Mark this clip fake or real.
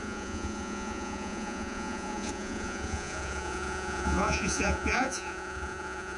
fake